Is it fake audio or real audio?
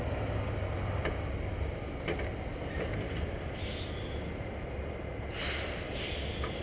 real